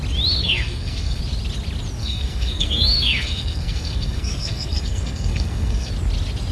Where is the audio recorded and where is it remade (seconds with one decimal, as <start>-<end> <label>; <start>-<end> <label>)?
0.0-0.4 recorded; 0.4-1.2 remade; 1.2-2.0 recorded; 2.0-5.9 remade; 5.9-6.5 recorded